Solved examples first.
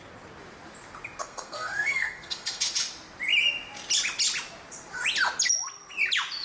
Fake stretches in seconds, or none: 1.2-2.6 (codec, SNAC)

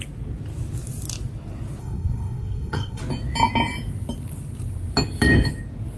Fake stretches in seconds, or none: 1.8-3.0 (codec, SNAC)

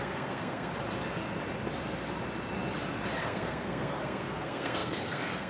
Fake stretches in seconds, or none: 0.0-0.7 (codec, SNAC); 3.2-5.5

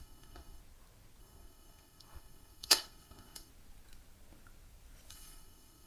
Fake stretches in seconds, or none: 0.0-0.6 (codec, SNAC); 1.2-3.5; 5.1-5.9

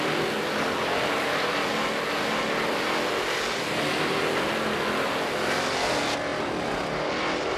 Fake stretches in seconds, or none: none

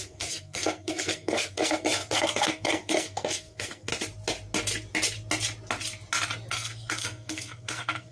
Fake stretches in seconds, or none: 0.0-3.9 (codec, SNAC); 6.5-8.1